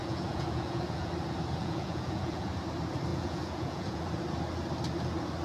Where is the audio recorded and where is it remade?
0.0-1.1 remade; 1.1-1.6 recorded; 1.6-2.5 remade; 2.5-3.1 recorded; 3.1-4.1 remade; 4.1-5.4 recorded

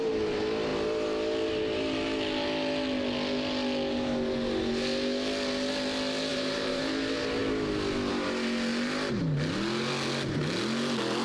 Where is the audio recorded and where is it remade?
0.0-6.3 recorded; 6.3-6.8 remade; 6.8-11.2 recorded